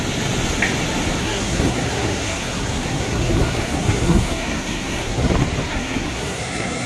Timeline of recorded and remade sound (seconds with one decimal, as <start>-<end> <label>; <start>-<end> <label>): 0.0-1.2 recorded; 1.2-5.3 remade; 5.3-5.7 recorded; 5.7-6.9 remade